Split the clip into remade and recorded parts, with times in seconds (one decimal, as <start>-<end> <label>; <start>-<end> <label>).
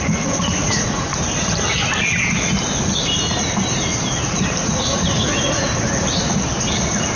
0.0-1.1 remade; 1.1-4.6 recorded; 4.6-5.7 remade; 5.7-7.2 recorded